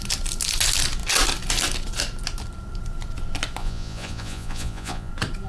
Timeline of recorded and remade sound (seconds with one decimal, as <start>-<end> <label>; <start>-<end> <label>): 0.0-3.6 recorded; 3.6-5.1 remade; 5.1-5.5 recorded